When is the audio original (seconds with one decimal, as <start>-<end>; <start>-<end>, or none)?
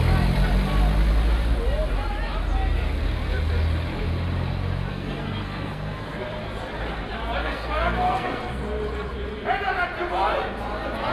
0.0-4.9; 6.2-7.4; 8.6-11.1